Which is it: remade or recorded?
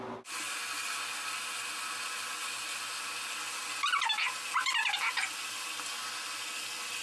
recorded